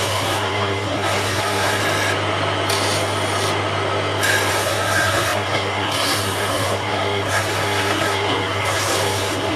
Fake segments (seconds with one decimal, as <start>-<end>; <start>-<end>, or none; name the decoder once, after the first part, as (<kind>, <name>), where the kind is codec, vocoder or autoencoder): 0.0-1.8 (codec, SNAC); 4.5-9.6